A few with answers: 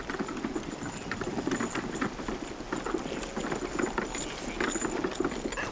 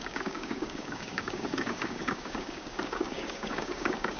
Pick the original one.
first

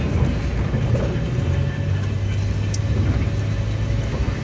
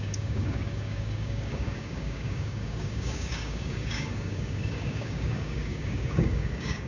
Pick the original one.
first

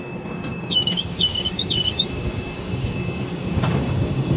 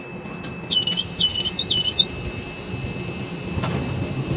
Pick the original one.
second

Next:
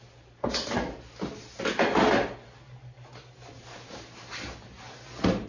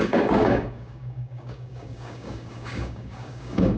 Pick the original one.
first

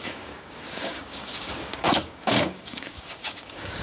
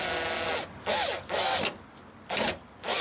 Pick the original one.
second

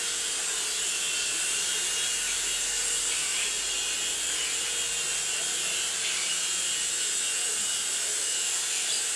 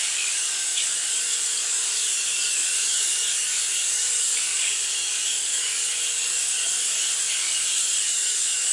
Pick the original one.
first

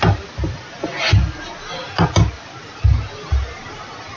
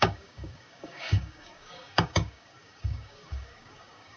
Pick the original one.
first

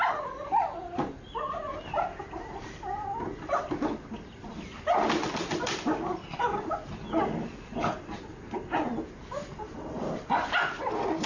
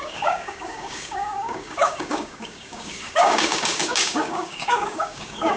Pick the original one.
first